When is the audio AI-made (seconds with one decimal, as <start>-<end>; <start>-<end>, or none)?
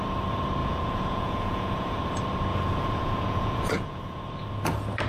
0.6-2.0; 2.5-4.2